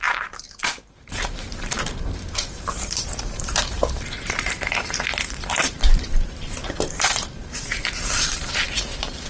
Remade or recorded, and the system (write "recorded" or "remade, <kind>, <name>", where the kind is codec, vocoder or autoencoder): remade, vocoder, BigVGAN v2